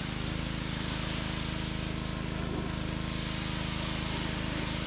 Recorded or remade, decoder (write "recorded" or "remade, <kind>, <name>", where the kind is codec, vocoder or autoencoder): recorded